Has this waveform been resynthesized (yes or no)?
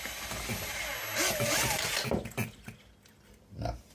no